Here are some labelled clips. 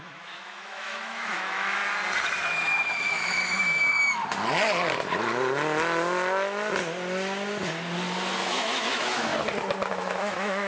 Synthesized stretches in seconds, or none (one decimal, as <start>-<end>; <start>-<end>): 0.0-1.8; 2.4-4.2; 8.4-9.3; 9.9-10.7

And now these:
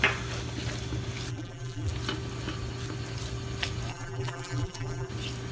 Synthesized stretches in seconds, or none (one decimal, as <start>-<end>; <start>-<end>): 1.3-1.9; 3.9-5.1

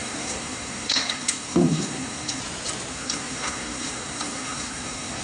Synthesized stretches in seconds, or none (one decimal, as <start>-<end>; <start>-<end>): 0.0-2.4; 2.9-5.2

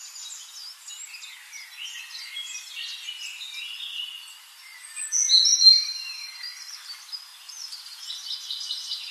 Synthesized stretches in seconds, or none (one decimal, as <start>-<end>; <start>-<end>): none

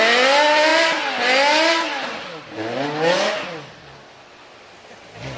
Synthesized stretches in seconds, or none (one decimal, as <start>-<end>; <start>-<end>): none